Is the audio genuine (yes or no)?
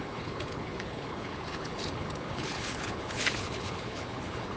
no